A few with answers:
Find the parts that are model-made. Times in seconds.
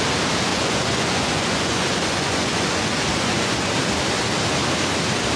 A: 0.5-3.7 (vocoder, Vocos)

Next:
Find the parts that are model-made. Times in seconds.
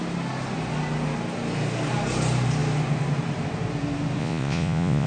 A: 4.2-5.1 (vocoder, Vocos)